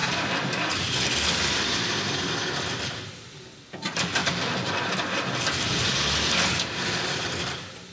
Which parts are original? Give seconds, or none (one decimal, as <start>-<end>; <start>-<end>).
0.0-7.9